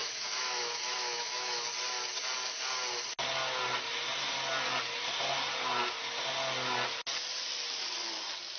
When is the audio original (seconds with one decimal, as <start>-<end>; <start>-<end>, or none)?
1.7-8.6